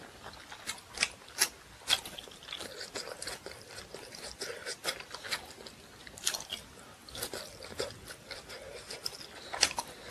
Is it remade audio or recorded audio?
recorded